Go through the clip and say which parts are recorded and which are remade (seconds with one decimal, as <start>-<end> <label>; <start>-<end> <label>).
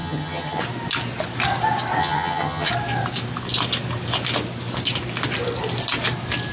0.0-0.6 remade; 0.6-2.0 recorded; 2.0-2.7 remade; 2.7-6.5 recorded